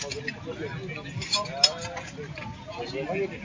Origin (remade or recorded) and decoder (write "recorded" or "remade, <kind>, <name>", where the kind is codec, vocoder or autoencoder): recorded